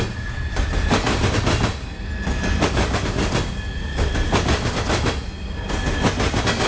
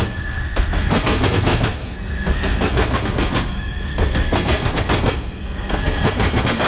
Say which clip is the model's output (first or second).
second